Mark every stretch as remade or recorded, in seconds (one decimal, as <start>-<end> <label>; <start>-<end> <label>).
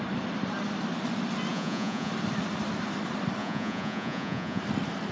0.0-1.5 recorded; 1.5-2.1 remade; 2.1-3.4 recorded; 3.4-4.6 remade; 4.6-5.1 recorded